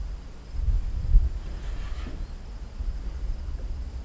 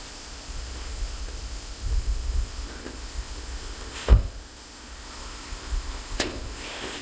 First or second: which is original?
first